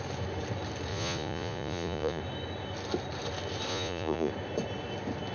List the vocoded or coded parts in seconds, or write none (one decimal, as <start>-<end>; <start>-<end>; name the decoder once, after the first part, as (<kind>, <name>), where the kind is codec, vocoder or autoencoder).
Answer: 0.9-2.2 (vocoder, Vocos); 3.7-4.3